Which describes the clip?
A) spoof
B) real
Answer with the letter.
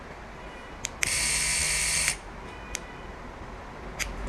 B